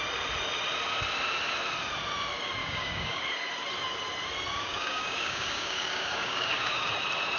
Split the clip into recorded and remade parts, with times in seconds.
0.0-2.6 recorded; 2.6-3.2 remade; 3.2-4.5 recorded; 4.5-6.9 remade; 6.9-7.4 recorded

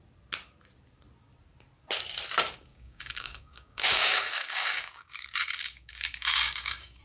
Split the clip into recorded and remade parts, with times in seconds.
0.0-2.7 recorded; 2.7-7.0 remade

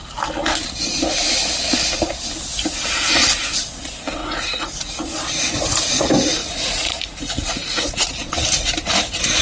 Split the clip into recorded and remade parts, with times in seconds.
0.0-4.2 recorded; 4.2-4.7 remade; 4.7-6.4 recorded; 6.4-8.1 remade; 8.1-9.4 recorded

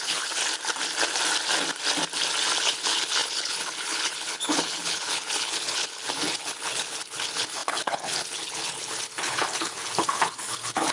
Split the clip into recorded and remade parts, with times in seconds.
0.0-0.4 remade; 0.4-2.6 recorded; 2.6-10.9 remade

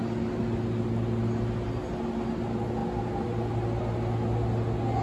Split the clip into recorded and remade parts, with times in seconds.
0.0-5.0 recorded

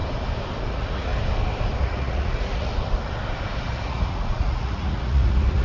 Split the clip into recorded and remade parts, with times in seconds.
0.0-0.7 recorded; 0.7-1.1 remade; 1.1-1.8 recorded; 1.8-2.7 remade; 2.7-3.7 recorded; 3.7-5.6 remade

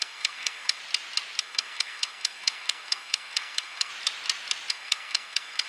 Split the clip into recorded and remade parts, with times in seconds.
0.0-0.8 remade; 0.8-1.4 recorded; 1.4-3.9 remade; 3.9-4.7 recorded; 4.7-5.7 remade

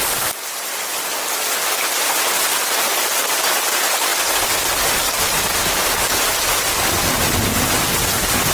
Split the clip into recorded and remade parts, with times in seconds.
0.0-8.5 recorded